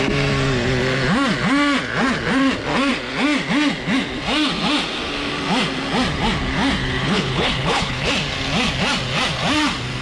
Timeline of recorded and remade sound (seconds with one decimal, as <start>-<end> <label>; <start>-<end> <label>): 0.0-7.0 recorded; 7.0-8.1 remade; 8.1-10.0 recorded